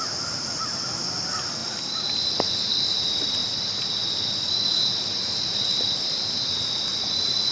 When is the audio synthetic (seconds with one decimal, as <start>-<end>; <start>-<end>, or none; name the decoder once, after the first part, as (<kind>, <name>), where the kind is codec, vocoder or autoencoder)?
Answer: none